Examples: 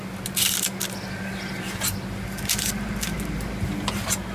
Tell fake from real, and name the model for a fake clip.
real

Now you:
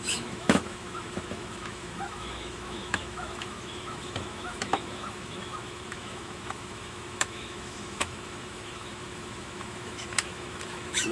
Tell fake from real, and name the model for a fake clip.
fake, autoencoder, DAC-VAE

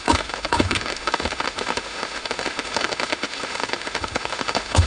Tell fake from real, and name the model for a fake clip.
fake, autoencoder, DAC-VAE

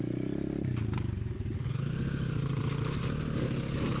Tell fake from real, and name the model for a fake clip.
real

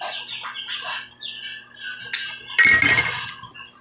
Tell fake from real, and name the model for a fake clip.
real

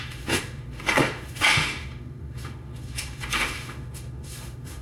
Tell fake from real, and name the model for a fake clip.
fake, autoencoder, DAC-VAE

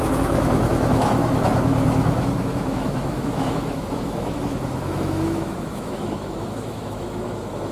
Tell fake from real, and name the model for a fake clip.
fake, autoencoder, DAC-VAE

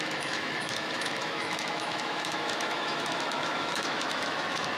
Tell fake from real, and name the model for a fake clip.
fake, autoencoder, DAC-VAE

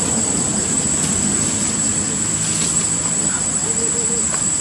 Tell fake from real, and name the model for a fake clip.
real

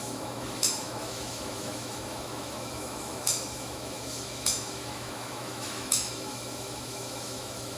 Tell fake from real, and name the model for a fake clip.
fake, autoencoder, DAC-VAE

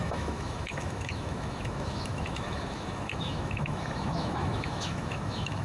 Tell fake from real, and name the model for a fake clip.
fake, autoencoder, DAC-VAE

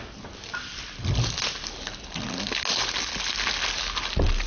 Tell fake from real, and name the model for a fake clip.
real